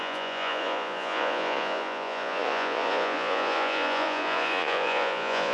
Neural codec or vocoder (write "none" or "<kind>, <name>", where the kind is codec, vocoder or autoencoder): vocoder, Vocos